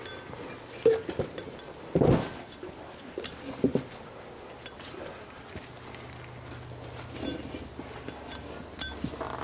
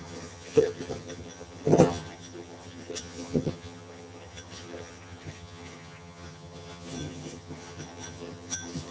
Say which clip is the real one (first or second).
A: first